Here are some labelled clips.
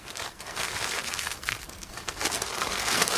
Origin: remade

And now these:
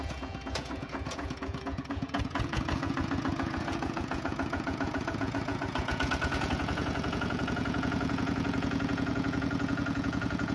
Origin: remade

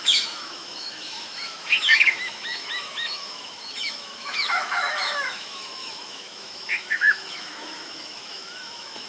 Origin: remade